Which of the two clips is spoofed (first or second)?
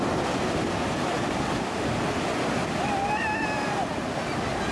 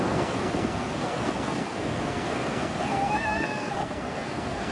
second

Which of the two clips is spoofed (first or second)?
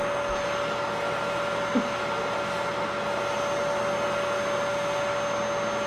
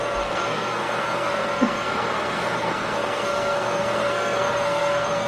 second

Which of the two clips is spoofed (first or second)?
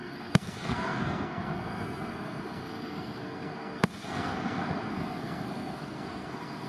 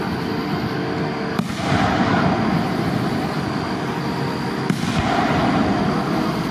first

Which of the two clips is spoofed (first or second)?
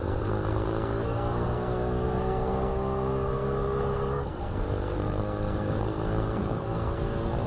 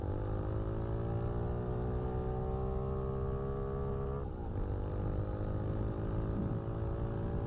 first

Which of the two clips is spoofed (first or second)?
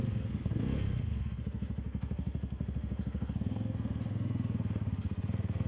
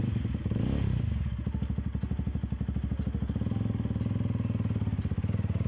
first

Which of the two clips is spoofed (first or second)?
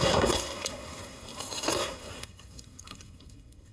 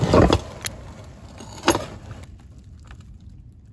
first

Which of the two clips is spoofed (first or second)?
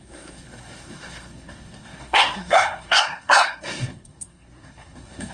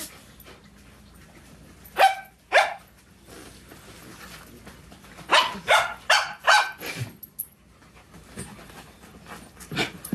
first